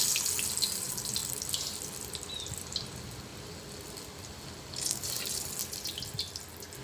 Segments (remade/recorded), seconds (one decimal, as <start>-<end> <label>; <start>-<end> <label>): 0.0-6.8 recorded